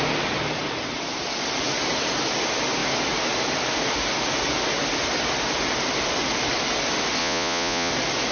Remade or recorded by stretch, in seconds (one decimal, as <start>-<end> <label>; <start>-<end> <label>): 0.0-7.2 recorded; 7.2-7.9 remade; 7.9-8.3 recorded